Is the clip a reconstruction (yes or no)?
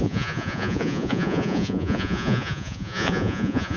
yes